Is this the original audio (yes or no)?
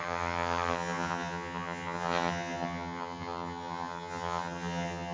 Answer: no